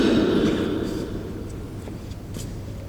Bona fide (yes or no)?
yes